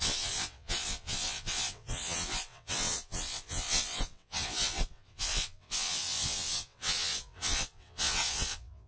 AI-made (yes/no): yes